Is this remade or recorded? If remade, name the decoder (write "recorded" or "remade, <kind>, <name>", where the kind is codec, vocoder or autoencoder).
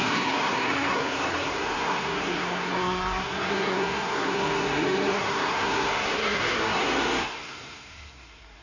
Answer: remade, codec, SNAC